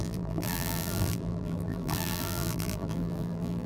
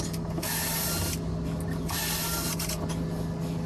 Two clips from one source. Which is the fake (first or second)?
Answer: first